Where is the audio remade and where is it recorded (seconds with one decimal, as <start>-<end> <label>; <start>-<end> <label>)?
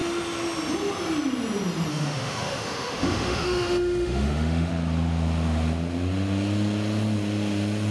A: 0.0-1.9 recorded; 1.9-4.7 remade; 4.7-7.9 recorded